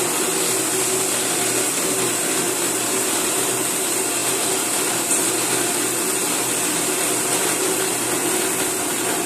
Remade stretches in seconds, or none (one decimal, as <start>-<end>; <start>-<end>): 4.2-5.3